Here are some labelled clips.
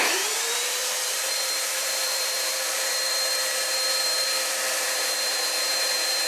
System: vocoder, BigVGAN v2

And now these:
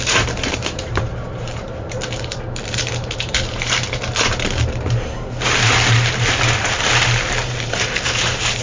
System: vocoder, BigVGAN v2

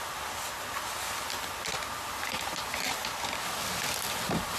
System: none